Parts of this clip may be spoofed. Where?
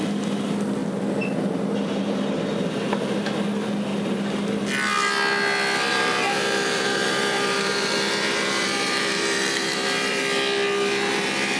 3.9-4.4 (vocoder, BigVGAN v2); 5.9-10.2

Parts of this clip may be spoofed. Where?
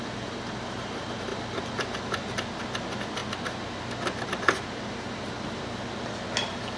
none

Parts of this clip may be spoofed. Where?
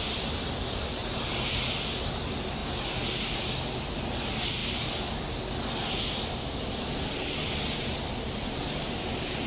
0.0-1.0 (vocoder, BigVGAN v2); 2.0-2.6; 3.8-4.6; 8.2-9.5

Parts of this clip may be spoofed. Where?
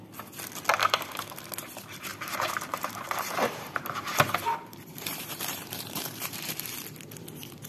0.8-1.4 (vocoder, BigVGAN v2); 2.1-6.7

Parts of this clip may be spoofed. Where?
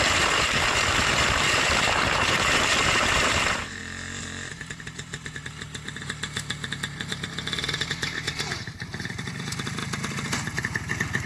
0.0-3.8 (vocoder, BigVGAN v2); 4.5-9.8; 10.6-11.3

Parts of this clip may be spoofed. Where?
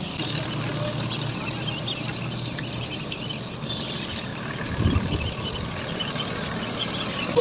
none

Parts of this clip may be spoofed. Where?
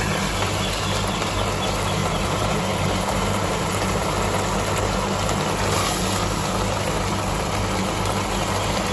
2.0-4.1 (vocoder, BigVGAN v2)